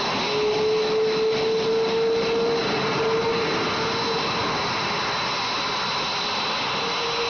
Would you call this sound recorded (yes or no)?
yes